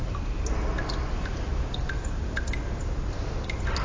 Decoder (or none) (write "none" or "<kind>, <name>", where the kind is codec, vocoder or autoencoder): none